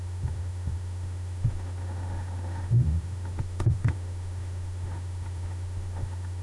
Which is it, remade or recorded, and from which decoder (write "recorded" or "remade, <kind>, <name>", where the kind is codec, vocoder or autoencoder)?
remade, autoencoder, DAC-VAE